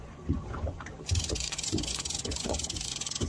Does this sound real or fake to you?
fake